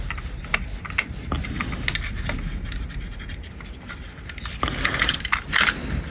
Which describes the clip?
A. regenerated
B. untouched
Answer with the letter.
B